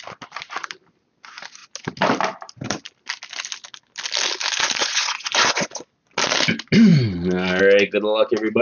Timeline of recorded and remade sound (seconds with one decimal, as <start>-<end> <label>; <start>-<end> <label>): 0.0-4.8 recorded; 4.8-5.8 remade; 5.8-8.6 recorded